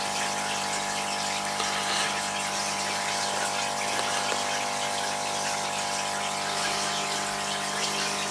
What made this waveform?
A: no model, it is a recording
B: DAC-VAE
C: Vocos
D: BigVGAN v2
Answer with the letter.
A